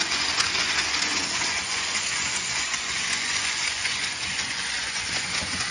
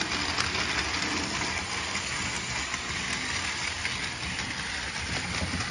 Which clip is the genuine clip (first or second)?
second